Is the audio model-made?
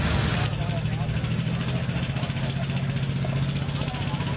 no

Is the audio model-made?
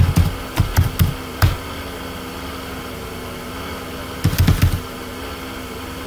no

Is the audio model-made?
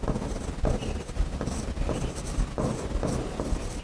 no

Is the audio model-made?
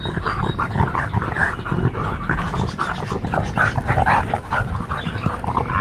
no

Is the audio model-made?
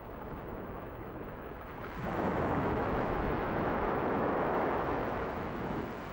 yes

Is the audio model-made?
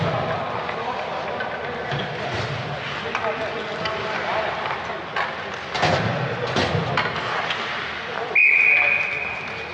no